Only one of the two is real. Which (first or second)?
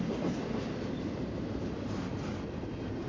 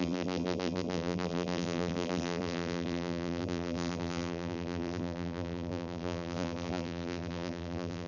first